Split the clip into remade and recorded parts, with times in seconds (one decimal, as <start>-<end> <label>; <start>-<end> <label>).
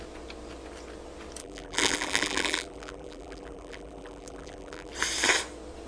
0.0-1.4 recorded; 1.4-4.9 remade; 4.9-5.9 recorded